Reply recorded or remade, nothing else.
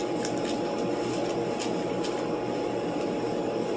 recorded